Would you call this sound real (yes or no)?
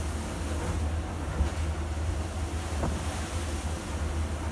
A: yes